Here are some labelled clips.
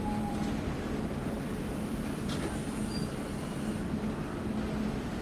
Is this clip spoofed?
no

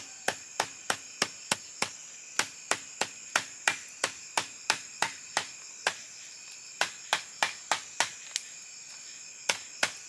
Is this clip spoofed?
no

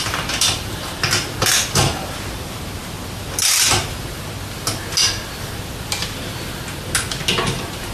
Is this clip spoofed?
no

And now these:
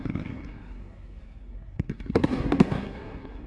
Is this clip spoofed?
yes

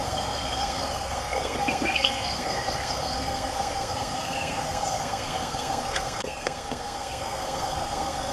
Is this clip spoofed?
yes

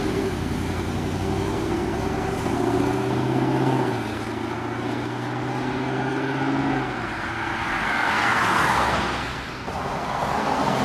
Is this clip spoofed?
yes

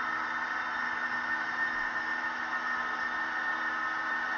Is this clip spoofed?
no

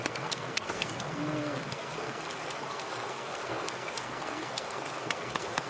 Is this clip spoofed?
yes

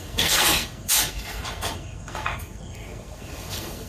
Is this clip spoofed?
yes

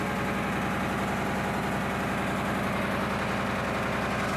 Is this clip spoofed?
no